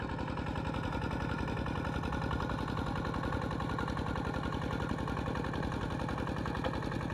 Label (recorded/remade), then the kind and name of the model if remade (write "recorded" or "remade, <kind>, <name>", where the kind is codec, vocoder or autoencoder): recorded